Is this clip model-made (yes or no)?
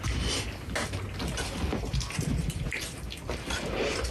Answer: no